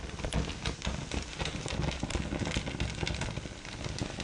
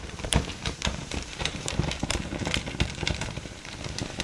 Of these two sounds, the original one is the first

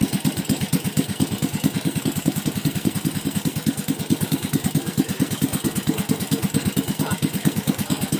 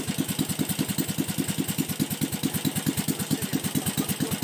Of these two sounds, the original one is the second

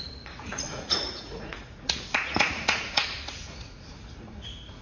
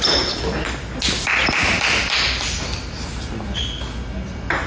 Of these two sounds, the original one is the second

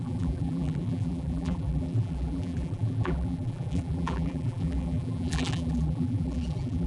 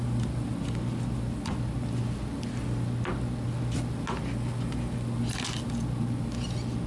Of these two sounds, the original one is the second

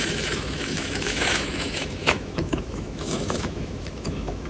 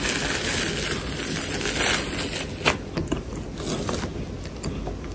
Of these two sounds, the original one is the second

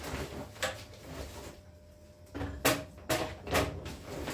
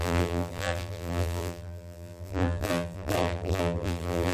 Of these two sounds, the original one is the first